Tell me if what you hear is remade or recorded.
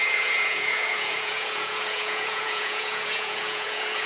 remade